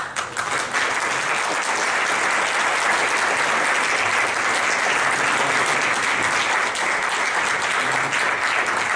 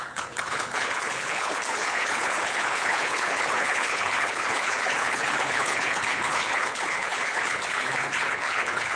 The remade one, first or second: second